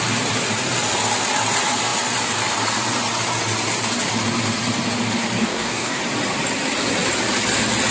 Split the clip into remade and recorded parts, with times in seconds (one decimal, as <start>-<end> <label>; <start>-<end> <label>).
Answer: 0.0-5.4 recorded; 5.4-6.0 remade; 6.0-7.9 recorded

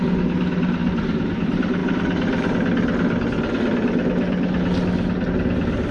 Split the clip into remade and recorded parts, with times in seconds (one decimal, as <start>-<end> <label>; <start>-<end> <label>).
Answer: 0.0-0.8 recorded; 0.8-1.3 remade; 1.3-5.9 recorded

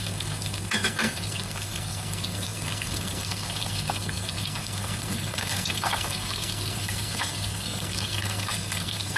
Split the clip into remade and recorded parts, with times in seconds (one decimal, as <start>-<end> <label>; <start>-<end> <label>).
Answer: 0.0-9.2 remade

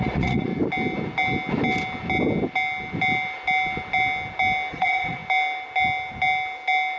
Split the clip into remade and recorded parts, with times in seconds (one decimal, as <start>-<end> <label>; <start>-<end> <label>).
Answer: 0.0-0.5 remade; 0.5-4.7 recorded; 4.7-5.2 remade; 5.2-7.0 recorded